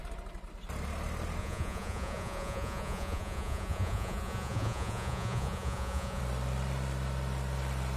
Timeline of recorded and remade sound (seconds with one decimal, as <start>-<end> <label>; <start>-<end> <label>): 0.0-1.4 recorded; 1.4-6.2 remade; 6.2-8.0 recorded